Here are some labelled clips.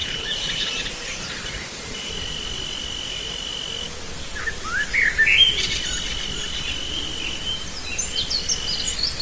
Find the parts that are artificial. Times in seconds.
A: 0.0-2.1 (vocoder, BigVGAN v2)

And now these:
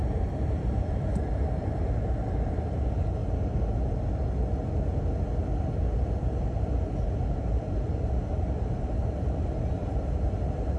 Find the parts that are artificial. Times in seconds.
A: 0.0-3.2 (vocoder, BigVGAN v2); 5.6-10.8

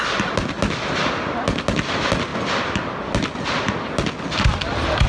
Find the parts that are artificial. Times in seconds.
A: none

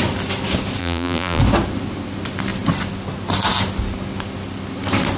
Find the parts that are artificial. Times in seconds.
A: 0.8-1.4 (vocoder, BigVGAN v2)

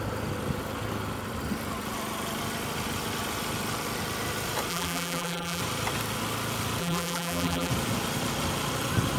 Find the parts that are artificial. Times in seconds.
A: 4.7-5.6 (vocoder, BigVGAN v2); 6.8-7.7

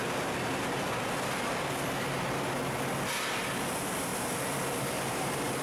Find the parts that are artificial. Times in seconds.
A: none

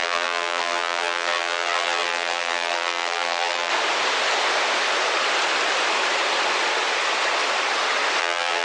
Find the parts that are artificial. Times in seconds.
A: 0.0-3.7 (vocoder, BigVGAN v2); 8.2-8.6

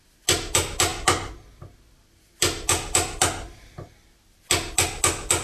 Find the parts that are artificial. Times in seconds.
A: none